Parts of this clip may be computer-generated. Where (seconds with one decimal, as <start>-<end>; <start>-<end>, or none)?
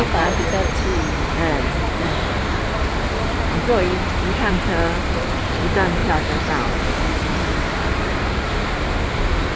none